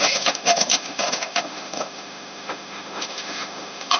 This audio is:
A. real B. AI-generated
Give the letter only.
B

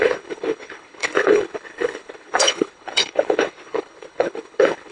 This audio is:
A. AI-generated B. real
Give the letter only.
A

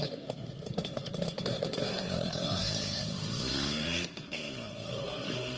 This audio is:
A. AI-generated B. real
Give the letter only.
A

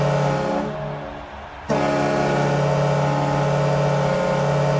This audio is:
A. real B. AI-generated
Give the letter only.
A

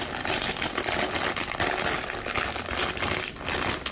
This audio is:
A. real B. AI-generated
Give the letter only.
A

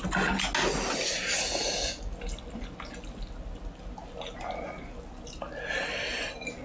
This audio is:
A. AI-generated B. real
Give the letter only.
B